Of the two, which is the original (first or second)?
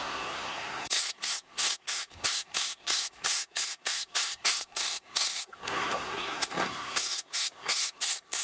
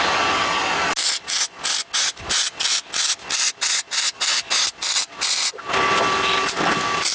second